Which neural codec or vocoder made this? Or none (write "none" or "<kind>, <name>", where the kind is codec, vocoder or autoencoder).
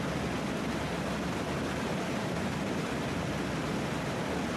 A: none